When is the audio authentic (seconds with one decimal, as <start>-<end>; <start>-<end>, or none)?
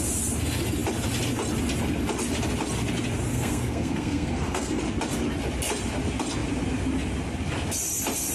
0.0-3.3; 4.8-8.3